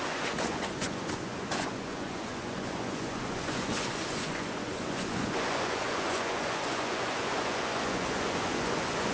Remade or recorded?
remade